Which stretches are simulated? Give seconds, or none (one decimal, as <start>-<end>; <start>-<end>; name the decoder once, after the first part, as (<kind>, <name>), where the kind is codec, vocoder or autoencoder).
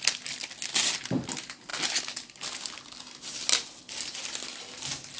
none